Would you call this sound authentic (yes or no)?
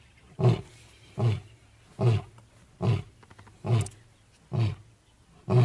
yes